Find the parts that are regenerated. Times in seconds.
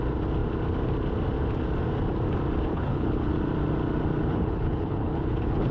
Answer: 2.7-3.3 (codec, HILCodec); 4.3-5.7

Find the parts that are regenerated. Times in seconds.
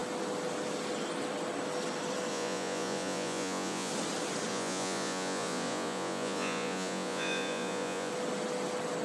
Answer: 2.3-3.9 (vocoder, Vocos); 4.5-8.1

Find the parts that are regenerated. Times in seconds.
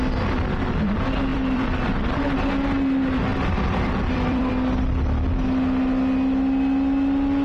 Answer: 1.3-2.5 (vocoder, BigVGAN v2); 3.3-4.5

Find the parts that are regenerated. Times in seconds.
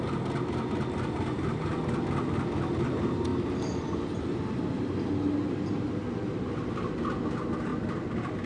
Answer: none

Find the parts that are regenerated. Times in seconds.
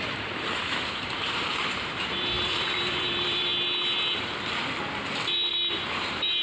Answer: 0.0-3.5 (vocoder, BigVGAN v2); 5.9-6.4